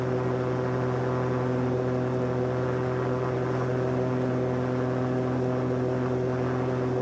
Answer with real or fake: real